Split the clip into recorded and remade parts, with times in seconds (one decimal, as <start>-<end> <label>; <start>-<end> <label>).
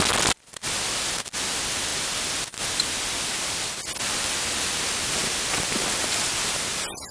0.0-7.1 recorded